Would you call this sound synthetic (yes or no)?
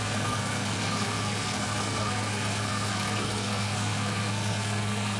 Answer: yes